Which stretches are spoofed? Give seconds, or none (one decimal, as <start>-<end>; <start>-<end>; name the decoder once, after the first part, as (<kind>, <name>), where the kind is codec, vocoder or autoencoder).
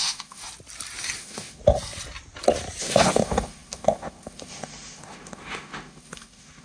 0.0-0.4 (autoencoder, DAC-VAE); 1.2-1.6; 2.8-6.6